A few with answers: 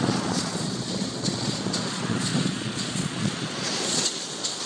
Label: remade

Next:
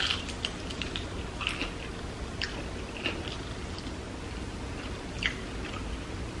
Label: recorded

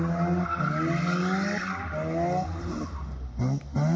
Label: recorded